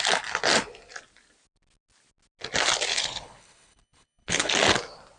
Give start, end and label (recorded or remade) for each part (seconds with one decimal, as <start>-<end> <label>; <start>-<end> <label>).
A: 0.0-2.9 recorded; 2.9-4.5 remade; 4.5-5.2 recorded